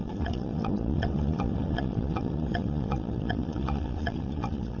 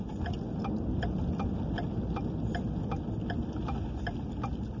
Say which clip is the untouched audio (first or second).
second